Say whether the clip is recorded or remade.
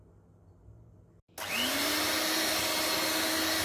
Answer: recorded